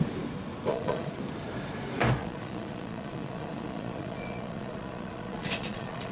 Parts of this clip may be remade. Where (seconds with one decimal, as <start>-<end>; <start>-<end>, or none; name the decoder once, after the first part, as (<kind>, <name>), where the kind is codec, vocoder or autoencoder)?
0.7-1.2 (vocoder, Vocos); 2.2-6.1